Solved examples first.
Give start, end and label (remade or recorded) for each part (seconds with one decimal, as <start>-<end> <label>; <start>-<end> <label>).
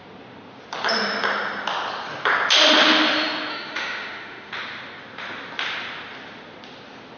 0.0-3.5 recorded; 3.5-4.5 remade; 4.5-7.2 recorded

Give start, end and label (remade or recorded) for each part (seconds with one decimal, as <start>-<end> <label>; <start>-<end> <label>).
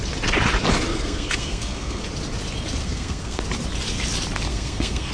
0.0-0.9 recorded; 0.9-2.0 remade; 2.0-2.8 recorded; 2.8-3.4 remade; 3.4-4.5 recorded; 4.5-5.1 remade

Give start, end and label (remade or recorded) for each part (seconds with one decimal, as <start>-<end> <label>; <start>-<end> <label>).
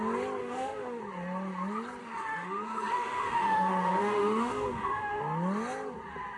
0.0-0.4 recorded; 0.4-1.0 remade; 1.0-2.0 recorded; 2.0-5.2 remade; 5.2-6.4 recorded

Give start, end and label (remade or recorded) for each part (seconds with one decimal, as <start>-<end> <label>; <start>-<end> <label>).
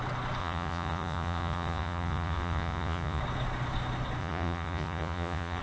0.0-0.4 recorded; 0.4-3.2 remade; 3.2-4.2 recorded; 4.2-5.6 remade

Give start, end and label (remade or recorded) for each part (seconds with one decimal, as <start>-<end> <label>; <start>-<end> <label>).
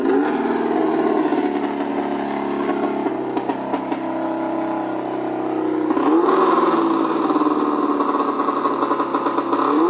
0.0-9.9 recorded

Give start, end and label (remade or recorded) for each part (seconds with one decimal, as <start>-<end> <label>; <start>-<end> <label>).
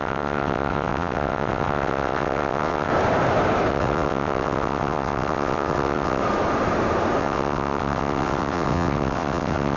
0.0-2.9 remade; 2.9-3.7 recorded; 3.7-6.2 remade; 6.2-7.2 recorded; 7.2-9.8 remade